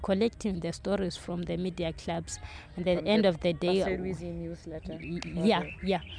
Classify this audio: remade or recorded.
recorded